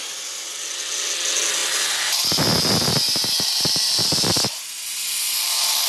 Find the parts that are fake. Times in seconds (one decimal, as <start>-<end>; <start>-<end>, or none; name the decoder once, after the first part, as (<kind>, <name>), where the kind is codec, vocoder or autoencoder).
none